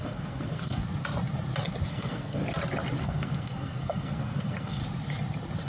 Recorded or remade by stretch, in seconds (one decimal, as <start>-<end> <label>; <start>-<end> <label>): 0.0-0.8 remade; 0.8-1.9 recorded; 1.9-2.4 remade; 2.4-3.0 recorded; 3.0-4.8 remade; 4.8-5.7 recorded